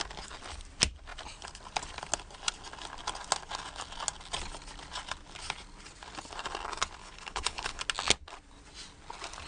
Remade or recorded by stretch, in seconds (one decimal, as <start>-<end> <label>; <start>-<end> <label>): 0.0-7.0 recorded; 7.0-7.8 remade; 7.8-9.5 recorded